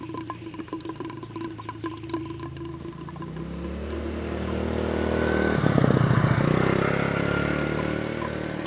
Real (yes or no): yes